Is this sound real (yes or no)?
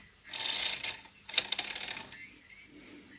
yes